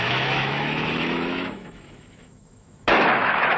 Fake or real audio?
fake